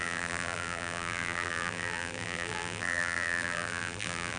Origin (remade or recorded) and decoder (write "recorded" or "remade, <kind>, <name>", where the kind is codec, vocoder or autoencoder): remade, vocoder, BigVGAN v2